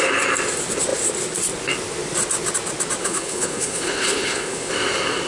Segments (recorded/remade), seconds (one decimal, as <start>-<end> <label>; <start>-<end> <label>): 0.0-3.0 recorded; 3.0-4.7 remade; 4.7-5.3 recorded